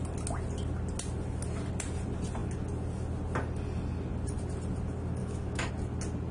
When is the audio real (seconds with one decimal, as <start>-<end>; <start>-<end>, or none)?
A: 0.0-5.2; 5.7-6.3